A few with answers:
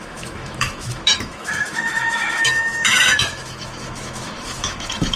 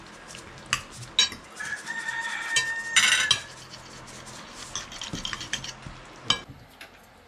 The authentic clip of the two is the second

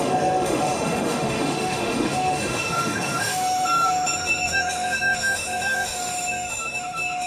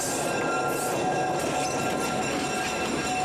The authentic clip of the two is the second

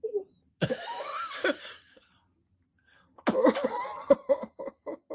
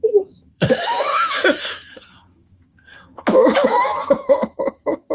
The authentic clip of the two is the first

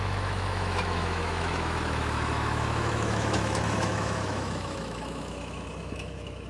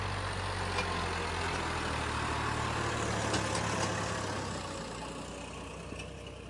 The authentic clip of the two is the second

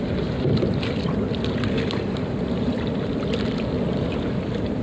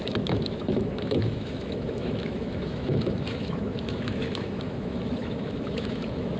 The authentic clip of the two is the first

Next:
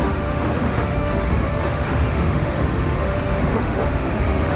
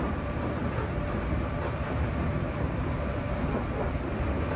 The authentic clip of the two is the second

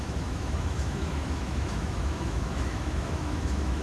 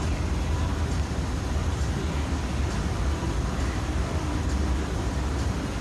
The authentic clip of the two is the second